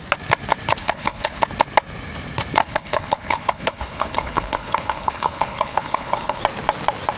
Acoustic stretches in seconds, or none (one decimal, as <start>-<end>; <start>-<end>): 0.0-0.8; 1.4-2.6; 6.4-7.2

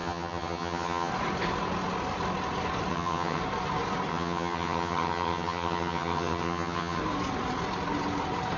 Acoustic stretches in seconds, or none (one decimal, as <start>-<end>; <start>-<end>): 1.1-2.9; 3.4-4.1; 7.0-8.6

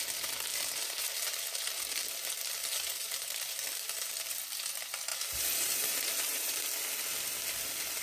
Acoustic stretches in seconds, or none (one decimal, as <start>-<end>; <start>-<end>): 0.0-0.5; 2.1-2.6; 4.1-5.1; 6.6-8.0

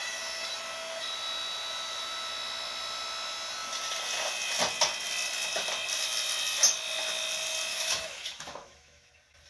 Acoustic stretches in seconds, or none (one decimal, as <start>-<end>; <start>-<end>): 0.0-7.7; 9.1-9.5

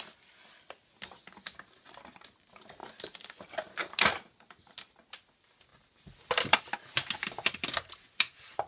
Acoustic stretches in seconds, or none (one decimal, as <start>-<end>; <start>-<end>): 0.0-8.7

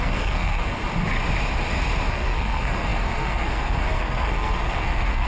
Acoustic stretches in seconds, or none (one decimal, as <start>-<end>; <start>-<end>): 0.8-2.1

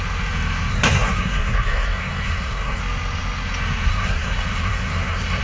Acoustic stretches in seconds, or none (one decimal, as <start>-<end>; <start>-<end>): 0.0-0.7; 2.8-3.9

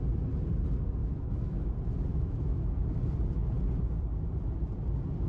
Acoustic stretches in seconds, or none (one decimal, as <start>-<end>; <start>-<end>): 0.0-1.0; 1.7-2.1; 3.0-5.3